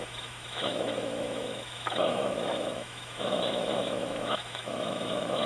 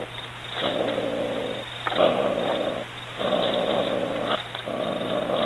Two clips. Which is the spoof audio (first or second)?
first